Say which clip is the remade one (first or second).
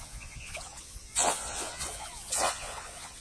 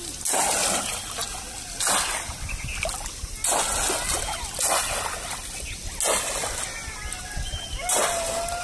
first